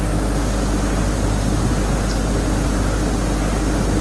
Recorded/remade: recorded